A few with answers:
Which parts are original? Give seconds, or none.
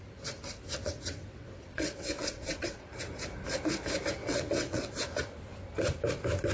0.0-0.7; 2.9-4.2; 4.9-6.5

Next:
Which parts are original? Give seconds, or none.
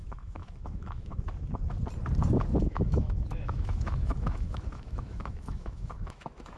1.3-2.5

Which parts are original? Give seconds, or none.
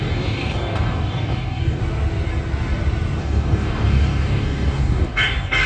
1.8-3.2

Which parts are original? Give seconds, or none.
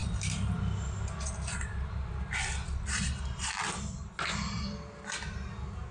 0.0-5.9